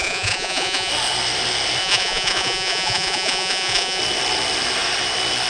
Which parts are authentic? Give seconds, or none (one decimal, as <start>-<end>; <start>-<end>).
0.9-1.8; 4.0-5.5